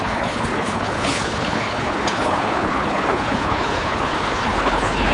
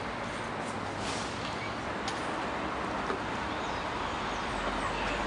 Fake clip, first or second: first